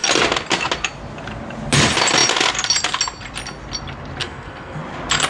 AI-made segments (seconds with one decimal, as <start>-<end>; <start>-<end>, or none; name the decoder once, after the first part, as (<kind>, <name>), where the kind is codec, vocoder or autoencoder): 4.2-4.8 (codec, SNAC)